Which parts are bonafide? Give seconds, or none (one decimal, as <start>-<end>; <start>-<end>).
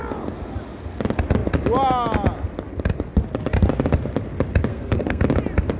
0.0-4.7; 5.2-5.8